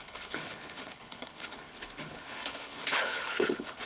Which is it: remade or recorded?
remade